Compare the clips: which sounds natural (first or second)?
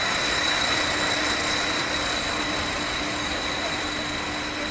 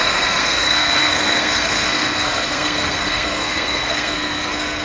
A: first